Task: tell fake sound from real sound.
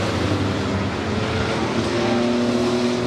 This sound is real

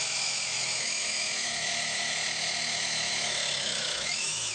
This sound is fake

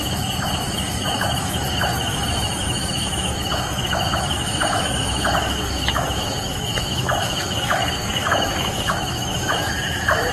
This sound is fake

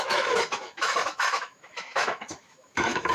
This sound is fake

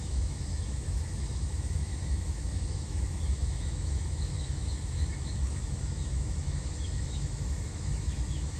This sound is fake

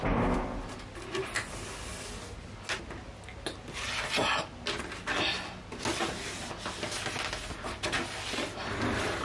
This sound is real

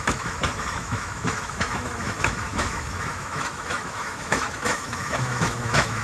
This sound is fake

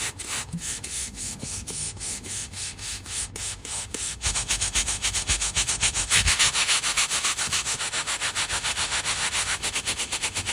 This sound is fake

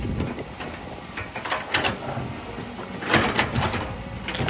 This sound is real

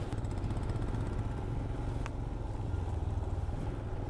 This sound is real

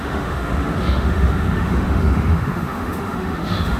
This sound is fake